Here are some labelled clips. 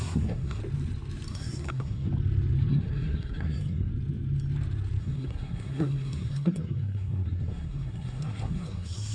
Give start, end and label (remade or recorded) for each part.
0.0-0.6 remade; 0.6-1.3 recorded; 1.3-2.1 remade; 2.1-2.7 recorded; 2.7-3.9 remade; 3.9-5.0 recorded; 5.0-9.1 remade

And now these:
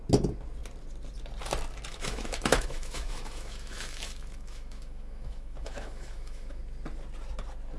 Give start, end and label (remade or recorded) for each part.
0.0-1.9 recorded; 1.9-6.6 remade; 6.6-7.8 recorded

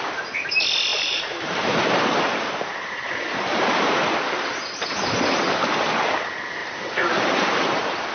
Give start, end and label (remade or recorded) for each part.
0.0-0.9 recorded; 0.9-4.1 remade; 4.1-6.6 recorded; 6.6-8.1 remade

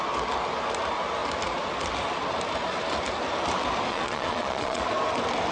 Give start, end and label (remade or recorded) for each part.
0.0-3.9 recorded; 3.9-4.8 remade; 4.8-5.5 recorded

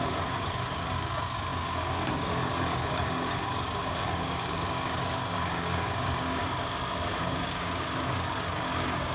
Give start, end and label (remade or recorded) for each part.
0.0-6.4 remade; 6.4-7.2 recorded; 7.2-9.1 remade

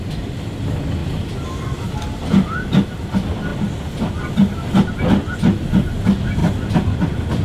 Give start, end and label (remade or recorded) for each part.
0.0-1.0 recorded; 1.0-3.0 remade; 3.0-7.4 recorded

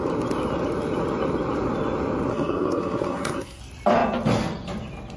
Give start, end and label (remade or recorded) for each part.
0.0-2.3 recorded; 2.3-3.6 remade; 3.6-5.2 recorded

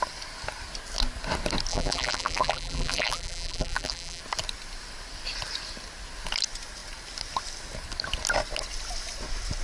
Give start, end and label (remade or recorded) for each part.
0.0-1.7 recorded; 1.7-4.2 remade; 4.2-9.6 recorded